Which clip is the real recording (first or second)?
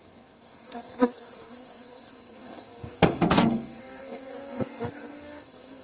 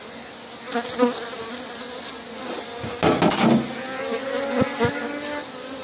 second